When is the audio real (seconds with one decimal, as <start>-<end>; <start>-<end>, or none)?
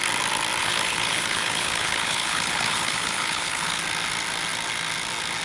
0.0-0.6; 3.8-5.4